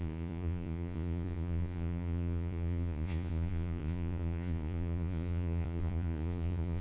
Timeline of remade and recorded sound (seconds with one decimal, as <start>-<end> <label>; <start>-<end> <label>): 0.0-6.8 remade